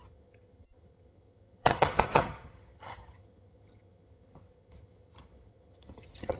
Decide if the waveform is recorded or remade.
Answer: remade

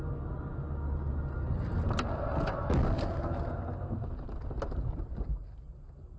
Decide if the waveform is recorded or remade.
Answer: recorded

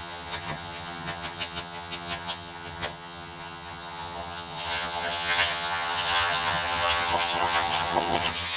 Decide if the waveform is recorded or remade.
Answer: remade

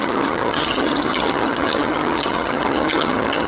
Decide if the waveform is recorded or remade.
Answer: remade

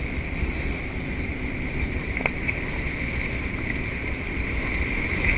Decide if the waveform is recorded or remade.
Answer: recorded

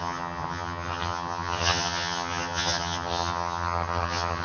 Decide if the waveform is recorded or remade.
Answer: remade